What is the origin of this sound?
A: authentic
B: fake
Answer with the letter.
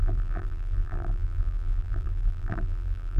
B